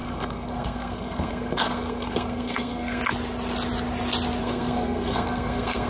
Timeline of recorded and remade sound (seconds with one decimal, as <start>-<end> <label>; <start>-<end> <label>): 0.0-3.0 remade; 3.0-4.4 recorded; 4.4-5.9 remade